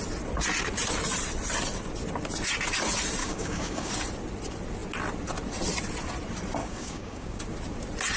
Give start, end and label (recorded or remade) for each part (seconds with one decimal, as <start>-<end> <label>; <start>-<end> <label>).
0.0-3.2 recorded; 3.2-3.9 remade; 3.9-6.6 recorded; 6.6-7.4 remade; 7.4-8.2 recorded